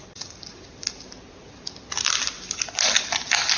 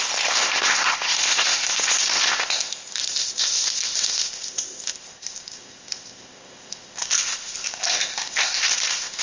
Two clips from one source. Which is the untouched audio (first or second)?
first